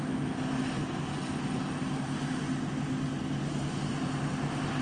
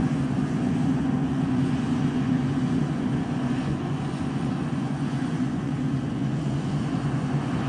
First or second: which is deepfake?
second